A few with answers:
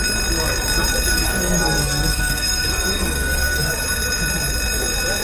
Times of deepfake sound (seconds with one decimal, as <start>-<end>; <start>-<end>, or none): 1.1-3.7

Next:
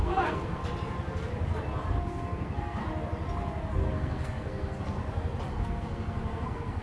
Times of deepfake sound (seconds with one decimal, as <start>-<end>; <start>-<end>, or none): 0.0-0.6; 2.0-2.8; 3.9-5.0; 5.5-6.8

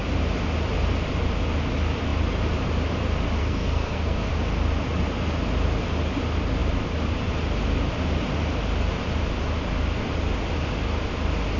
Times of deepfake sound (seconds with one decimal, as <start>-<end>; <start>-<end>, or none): 3.4-4.3